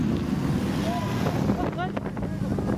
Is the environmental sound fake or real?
real